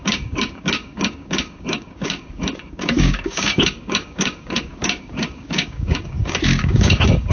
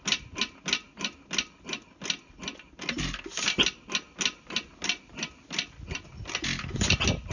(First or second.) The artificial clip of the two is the first